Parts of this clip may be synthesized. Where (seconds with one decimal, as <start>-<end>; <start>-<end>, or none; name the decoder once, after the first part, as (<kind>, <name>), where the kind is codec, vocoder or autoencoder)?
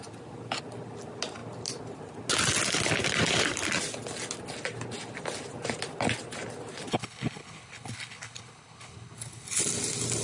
6.9-9.6 (codec, HILCodec)